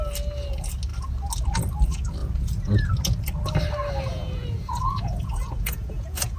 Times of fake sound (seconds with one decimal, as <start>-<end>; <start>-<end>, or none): 2.2-2.9; 4.1-6.4